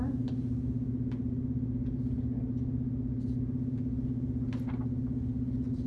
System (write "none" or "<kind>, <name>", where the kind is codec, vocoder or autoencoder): none